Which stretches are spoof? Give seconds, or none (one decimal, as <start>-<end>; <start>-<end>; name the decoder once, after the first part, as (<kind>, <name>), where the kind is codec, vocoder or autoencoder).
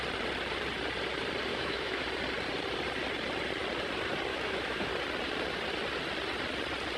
1.5-2.0 (autoencoder, DAC-VAE); 4.3-4.9